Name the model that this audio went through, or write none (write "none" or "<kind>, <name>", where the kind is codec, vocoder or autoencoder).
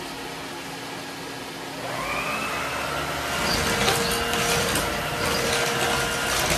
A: none